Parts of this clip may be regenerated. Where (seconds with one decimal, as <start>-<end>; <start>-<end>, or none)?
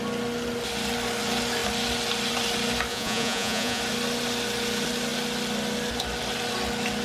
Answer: 2.9-3.8